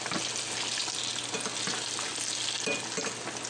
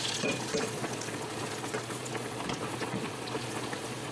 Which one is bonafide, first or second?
first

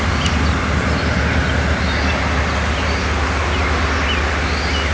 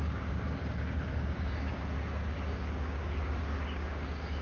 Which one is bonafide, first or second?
first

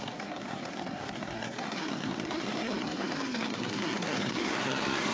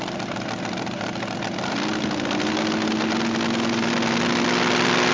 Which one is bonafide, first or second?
second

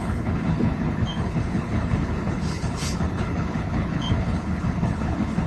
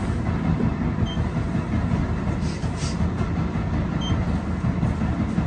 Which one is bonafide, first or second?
second